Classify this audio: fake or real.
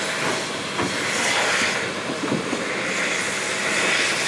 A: real